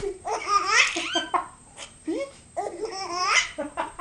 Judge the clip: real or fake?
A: fake